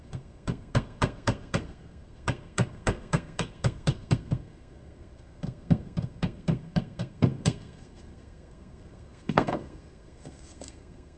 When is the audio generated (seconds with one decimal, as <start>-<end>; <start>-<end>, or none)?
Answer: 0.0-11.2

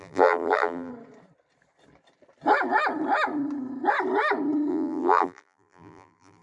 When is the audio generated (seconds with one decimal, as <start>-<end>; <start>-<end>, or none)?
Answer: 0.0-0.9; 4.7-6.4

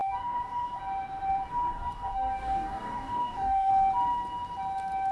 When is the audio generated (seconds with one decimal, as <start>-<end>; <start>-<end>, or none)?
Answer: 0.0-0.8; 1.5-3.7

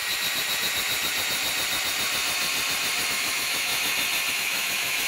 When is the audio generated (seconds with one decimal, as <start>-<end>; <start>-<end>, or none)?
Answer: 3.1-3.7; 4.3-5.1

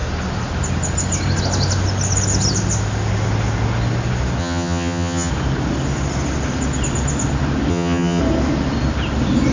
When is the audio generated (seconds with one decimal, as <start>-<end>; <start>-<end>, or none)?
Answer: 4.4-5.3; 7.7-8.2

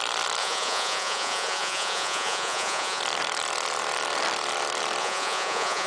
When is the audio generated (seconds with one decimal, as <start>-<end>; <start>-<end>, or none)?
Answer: 0.4-3.0; 5.0-5.9